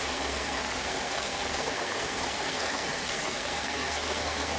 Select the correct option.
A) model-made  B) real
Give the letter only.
A